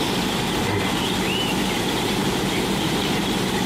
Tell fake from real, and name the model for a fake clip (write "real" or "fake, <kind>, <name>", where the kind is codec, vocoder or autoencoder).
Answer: fake, vocoder, BigVGAN v2